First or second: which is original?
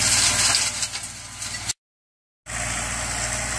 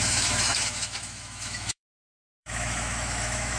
first